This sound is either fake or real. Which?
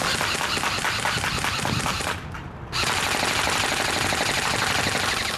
real